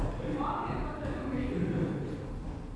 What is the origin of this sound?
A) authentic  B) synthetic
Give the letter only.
A